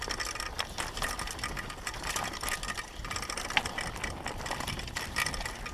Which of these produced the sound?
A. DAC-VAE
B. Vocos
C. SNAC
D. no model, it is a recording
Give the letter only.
D